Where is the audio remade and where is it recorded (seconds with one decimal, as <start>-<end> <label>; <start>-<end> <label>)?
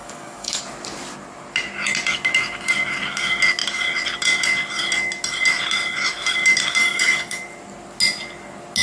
0.0-0.6 remade; 0.6-6.8 recorded; 6.8-7.4 remade; 7.4-8.8 recorded